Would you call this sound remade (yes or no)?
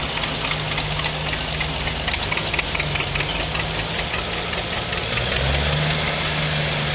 no